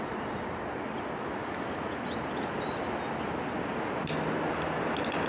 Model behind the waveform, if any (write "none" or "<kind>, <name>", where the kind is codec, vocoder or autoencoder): none